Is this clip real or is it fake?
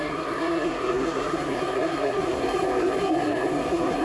fake